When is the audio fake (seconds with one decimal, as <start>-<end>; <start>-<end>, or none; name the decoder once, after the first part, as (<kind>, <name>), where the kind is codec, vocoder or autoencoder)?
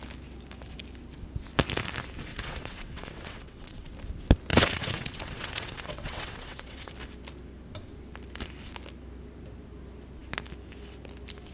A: 2.3-3.9 (vocoder, WaveNeXt); 4.5-6.9